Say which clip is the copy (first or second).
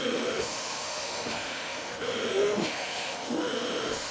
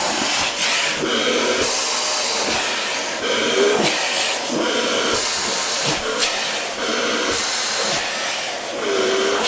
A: first